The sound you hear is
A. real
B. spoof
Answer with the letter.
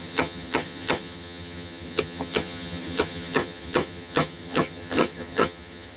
B